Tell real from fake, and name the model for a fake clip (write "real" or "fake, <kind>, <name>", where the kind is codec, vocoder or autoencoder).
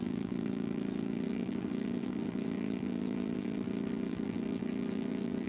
fake, vocoder, BigVGAN v2